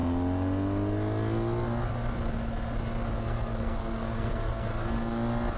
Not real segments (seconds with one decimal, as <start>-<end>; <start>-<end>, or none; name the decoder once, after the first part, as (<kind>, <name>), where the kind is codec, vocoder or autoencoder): 3.2-4.7 (codec, SNAC)